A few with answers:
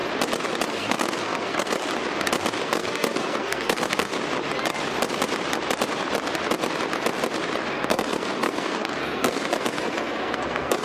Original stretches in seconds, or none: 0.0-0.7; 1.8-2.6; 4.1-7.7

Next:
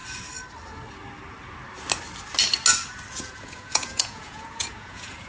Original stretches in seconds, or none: 0.0-3.2

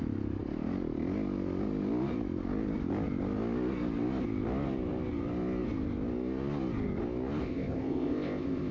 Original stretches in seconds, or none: 0.0-7.4

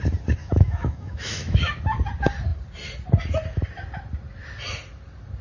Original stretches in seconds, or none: 0.0-0.4; 1.8-5.4

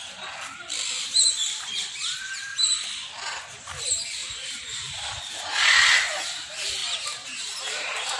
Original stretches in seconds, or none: 0.0-4.2; 5.1-6.8

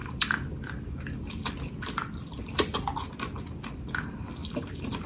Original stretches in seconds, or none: 0.0-5.1